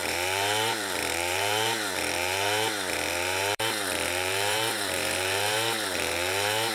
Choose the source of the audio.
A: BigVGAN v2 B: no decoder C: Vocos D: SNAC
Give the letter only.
A